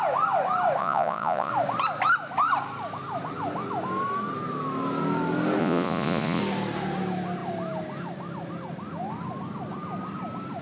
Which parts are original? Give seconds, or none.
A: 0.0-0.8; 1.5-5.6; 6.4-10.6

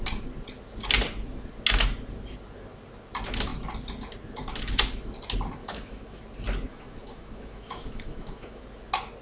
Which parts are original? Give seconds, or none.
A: 0.0-5.6; 6.2-6.7; 8.6-9.2

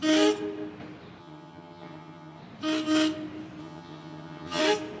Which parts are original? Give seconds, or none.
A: 0.0-1.2; 2.4-3.6; 4.6-5.0

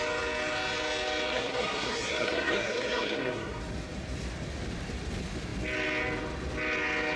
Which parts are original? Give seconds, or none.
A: 0.0-1.3; 3.6-7.2

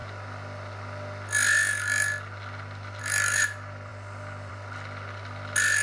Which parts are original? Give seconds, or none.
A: 0.0-5.8

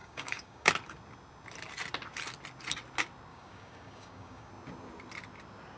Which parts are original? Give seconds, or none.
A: 0.7-3.3; 4.5-5.8

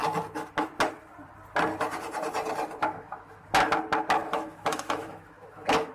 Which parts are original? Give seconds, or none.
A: 0.0-2.8; 3.4-4.2